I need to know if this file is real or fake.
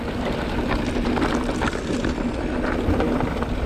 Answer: real